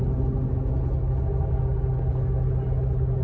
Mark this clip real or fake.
real